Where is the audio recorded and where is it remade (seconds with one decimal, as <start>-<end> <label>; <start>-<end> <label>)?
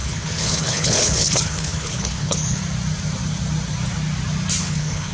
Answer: 0.0-2.6 remade; 2.6-4.6 recorded; 4.6-5.1 remade